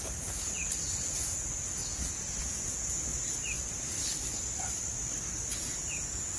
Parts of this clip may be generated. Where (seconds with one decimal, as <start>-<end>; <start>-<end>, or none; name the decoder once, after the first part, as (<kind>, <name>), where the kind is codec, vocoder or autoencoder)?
0.0-3.1 (vocoder, Vocos); 5.5-6.4